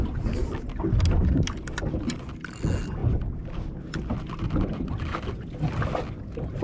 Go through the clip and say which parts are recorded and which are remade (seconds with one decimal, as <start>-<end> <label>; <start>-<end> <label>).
0.0-6.6 recorded